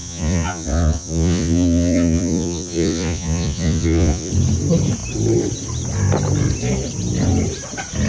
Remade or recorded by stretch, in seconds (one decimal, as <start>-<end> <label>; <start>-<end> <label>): 0.0-4.3 remade; 4.3-8.1 recorded